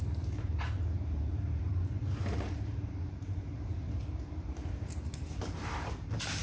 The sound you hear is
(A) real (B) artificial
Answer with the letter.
B